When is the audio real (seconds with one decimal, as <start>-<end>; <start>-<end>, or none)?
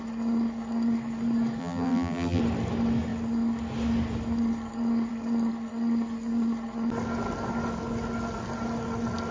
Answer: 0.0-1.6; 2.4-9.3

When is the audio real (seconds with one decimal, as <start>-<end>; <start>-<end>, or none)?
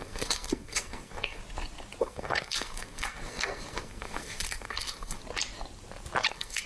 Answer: 1.4-2.0; 5.2-6.3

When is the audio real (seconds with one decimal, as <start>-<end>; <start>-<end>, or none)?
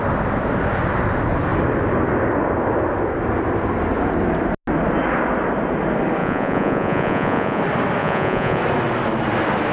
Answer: 0.0-6.2; 7.6-8.0; 8.6-9.7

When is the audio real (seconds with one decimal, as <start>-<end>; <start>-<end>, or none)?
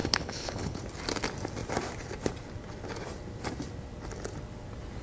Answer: 0.8-5.0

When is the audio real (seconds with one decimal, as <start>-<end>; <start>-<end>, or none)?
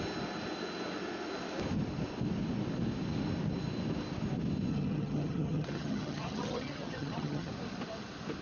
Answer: 0.0-4.7; 7.5-8.4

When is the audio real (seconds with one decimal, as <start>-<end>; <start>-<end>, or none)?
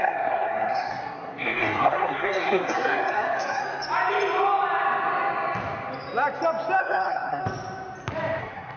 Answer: 3.6-6.8; 7.4-8.4